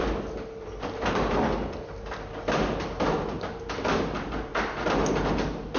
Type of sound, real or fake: real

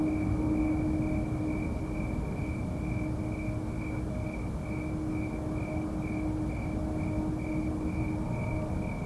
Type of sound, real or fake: real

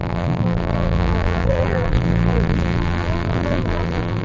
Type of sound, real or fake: fake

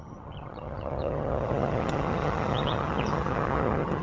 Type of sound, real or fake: fake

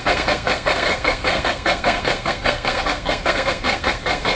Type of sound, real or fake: fake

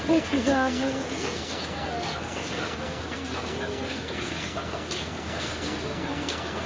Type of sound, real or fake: fake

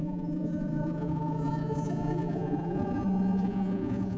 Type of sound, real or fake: fake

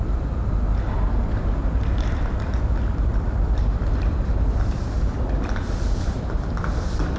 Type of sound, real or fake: fake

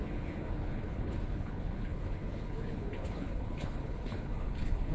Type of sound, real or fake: fake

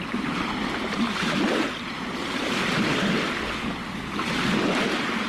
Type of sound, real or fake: real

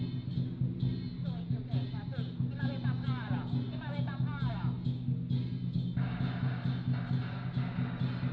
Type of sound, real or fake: real